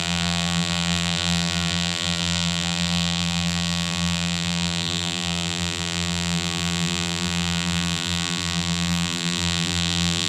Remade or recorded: remade